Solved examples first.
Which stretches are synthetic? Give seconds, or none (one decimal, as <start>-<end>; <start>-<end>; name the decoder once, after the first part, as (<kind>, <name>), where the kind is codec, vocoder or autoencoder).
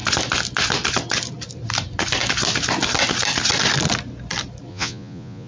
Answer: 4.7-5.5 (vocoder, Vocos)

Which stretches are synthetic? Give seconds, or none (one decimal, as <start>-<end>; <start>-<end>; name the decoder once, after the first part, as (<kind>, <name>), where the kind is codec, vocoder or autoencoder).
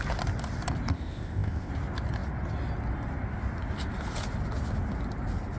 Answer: 0.9-1.7 (codec, ZipCodec)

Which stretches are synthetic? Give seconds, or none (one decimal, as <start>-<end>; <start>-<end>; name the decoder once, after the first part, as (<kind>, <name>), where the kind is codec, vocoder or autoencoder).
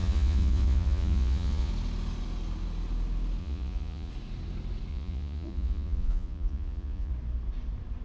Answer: 0.0-1.7 (vocoder, Vocos); 3.4-4.1; 4.9-7.1